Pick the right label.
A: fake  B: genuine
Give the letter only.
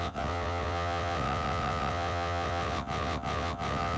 A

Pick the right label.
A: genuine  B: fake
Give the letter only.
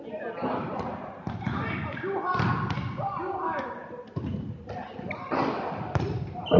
A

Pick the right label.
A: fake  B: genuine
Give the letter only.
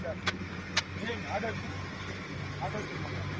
B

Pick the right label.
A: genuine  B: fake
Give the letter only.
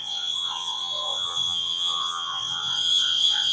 B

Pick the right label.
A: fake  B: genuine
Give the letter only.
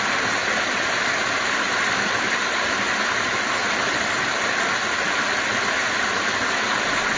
B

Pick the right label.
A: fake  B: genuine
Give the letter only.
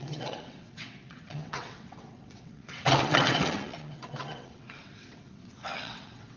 A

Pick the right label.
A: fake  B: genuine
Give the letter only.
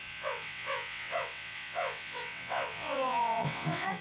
A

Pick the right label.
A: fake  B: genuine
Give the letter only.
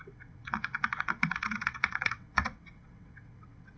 A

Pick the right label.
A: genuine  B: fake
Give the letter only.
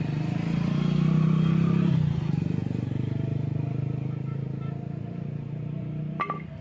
A